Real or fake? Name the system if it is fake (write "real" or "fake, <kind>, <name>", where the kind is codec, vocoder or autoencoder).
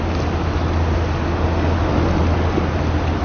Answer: real